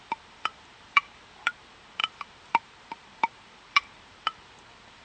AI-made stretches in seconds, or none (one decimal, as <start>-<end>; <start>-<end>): 0.0-5.0